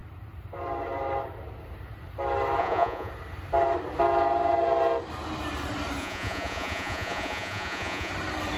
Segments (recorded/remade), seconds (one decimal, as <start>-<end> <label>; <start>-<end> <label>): 0.0-2.6 recorded; 2.6-3.1 remade; 3.1-6.0 recorded; 6.0-8.1 remade; 8.1-8.6 recorded